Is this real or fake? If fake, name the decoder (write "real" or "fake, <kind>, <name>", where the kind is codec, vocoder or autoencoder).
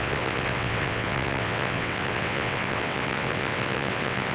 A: fake, vocoder, WaveNeXt